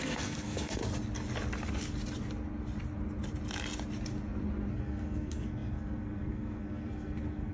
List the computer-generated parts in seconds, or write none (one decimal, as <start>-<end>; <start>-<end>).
0.0-0.8; 4.7-7.5